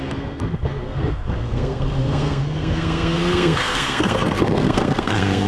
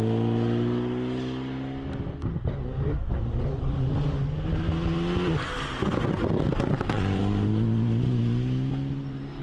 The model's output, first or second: first